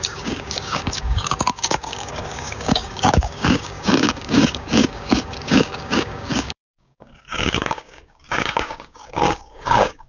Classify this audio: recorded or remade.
remade